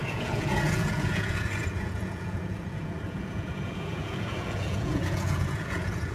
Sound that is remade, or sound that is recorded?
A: remade